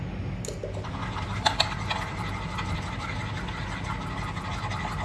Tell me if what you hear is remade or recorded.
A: recorded